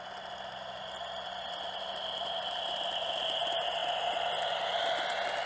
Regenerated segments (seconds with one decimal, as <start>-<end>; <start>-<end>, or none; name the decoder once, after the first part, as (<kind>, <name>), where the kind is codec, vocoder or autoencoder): none